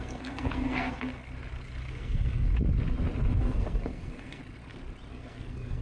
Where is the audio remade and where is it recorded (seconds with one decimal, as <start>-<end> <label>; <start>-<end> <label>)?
0.0-1.2 remade; 1.2-1.9 recorded; 1.9-2.5 remade; 2.5-3.4 recorded; 3.4-4.4 remade; 4.4-5.1 recorded; 5.1-5.8 remade